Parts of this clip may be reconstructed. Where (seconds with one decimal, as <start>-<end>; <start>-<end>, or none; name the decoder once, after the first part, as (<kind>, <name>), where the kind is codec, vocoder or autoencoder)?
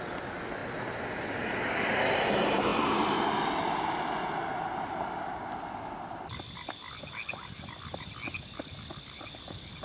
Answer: none